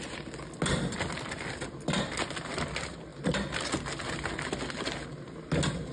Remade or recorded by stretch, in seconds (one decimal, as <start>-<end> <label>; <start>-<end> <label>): 0.0-5.9 recorded